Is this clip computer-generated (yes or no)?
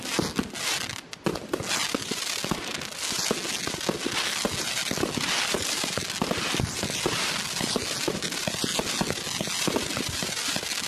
no